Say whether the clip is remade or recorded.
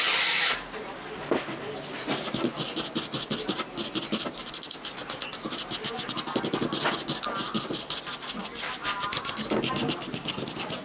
recorded